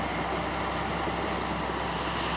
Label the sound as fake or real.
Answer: real